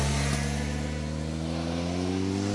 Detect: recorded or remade recorded